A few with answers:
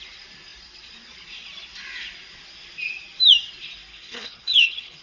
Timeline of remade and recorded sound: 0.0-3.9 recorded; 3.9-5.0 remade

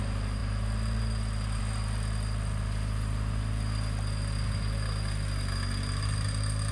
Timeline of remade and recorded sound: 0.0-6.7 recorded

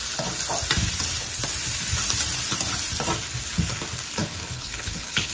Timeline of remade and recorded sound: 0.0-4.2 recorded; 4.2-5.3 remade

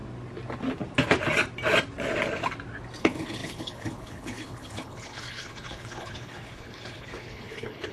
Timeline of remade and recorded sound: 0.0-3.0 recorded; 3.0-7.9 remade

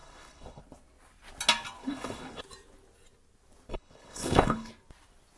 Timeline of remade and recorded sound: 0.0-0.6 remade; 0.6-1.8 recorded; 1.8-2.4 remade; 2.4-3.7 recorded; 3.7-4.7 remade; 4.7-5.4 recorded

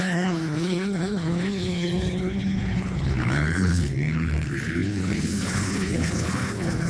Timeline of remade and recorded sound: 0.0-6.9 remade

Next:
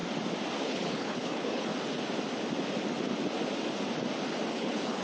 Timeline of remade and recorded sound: 0.0-0.6 recorded; 0.6-1.7 remade; 1.7-4.5 recorded; 4.5-5.0 remade